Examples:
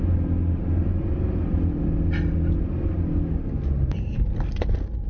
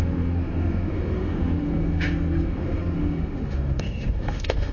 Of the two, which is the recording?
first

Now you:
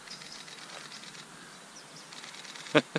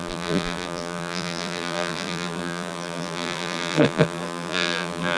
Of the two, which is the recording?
first